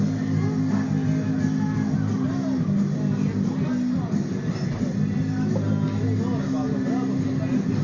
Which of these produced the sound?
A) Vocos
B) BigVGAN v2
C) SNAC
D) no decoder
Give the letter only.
D